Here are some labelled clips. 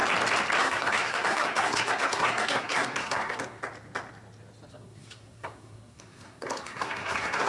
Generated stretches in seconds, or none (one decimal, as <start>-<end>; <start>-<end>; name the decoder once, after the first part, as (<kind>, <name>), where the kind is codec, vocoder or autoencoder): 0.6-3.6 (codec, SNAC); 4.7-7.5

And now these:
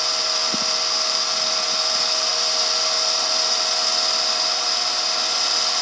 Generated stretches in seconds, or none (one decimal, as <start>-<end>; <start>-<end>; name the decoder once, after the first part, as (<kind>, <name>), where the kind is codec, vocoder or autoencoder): none

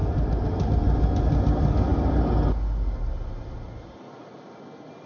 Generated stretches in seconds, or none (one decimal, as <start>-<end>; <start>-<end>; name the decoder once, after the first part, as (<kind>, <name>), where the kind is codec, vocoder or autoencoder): none

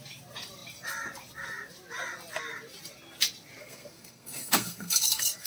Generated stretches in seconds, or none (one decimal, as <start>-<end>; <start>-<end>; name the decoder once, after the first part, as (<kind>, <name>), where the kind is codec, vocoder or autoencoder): 3.6-5.5 (codec, SNAC)

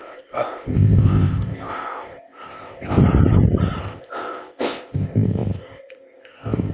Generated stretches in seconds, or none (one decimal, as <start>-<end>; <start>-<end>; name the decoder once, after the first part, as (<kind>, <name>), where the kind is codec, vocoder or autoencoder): 0.0-3.0 (codec, ZipCodec); 3.8-6.7